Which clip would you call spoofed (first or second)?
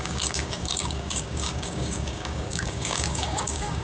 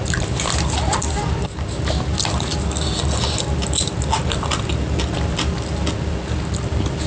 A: first